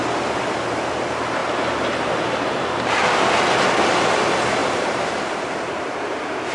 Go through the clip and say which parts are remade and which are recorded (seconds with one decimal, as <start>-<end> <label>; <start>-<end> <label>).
0.0-4.6 recorded; 4.6-6.5 remade